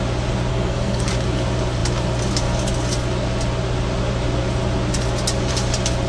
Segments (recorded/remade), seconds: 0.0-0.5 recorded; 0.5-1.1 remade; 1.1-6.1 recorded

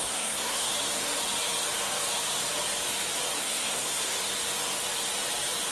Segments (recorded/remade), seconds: 0.0-0.7 remade; 0.7-3.4 recorded; 3.4-4.2 remade; 4.2-5.7 recorded

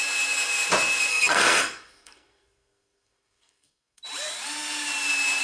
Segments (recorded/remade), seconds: 0.0-1.1 recorded; 1.1-4.0 remade; 4.0-5.4 recorded

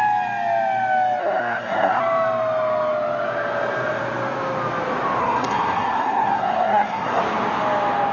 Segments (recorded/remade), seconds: 0.0-1.2 recorded; 1.2-2.0 remade; 2.0-5.2 recorded; 5.2-7.2 remade; 7.2-8.1 recorded

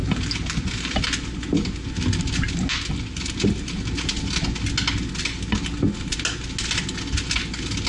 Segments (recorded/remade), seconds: 0.0-7.9 recorded

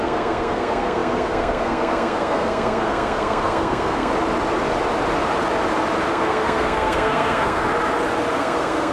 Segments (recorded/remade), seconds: 0.0-4.1 remade; 4.1-6.1 recorded; 6.1-7.6 remade; 7.6-8.3 recorded; 8.3-8.9 remade

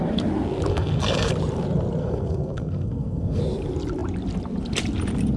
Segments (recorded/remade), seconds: 0.0-0.7 recorded; 0.7-1.3 remade; 1.3-2.0 recorded; 2.0-3.4 remade; 3.4-5.4 recorded

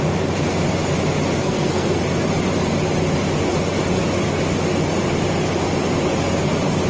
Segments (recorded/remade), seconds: 0.0-1.4 recorded; 1.4-2.0 remade; 2.0-6.9 recorded